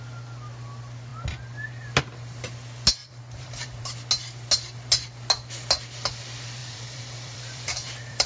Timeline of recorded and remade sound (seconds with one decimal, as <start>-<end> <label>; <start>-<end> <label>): 0.0-3.0 recorded; 3.0-3.8 remade; 3.8-6.6 recorded; 6.6-8.3 remade